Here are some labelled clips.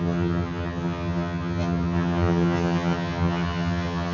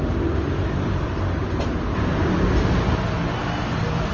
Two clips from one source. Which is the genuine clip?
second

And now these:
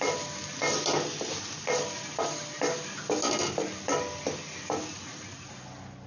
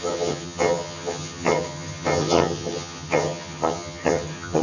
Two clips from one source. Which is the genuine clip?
first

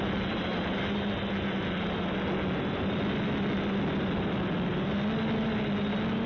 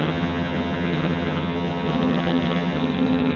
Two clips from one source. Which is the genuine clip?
first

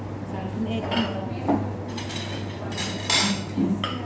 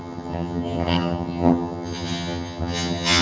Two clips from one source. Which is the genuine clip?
first